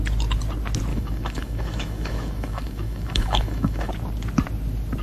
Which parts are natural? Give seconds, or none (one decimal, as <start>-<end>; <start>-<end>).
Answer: 0.0-0.9; 3.9-5.0